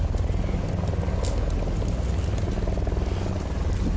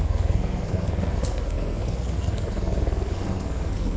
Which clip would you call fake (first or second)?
second